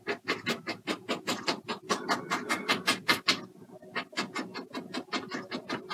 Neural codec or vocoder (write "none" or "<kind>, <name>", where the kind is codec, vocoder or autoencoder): none